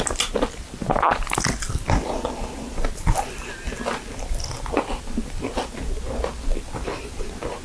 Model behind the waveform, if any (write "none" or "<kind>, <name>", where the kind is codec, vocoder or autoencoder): none